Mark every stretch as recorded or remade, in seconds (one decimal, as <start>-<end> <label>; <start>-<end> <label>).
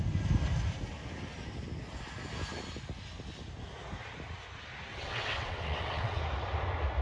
0.0-4.9 recorded; 4.9-6.2 remade; 6.2-7.0 recorded